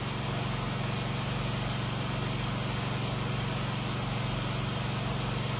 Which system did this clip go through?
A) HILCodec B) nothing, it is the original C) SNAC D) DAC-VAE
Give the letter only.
B